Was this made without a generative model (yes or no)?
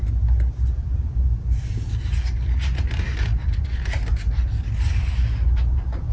yes